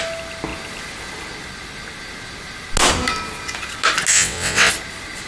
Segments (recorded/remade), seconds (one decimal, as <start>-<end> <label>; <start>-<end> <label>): 0.0-4.1 recorded; 4.1-4.7 remade; 4.7-5.3 recorded